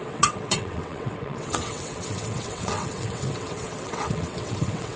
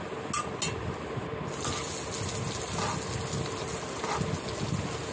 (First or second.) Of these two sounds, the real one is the second